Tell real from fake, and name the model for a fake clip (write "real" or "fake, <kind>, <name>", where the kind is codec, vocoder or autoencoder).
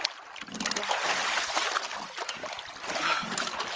real